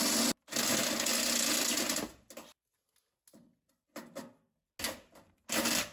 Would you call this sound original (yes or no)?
yes